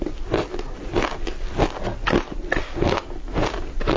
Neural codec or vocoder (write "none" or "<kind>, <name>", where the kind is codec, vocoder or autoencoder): none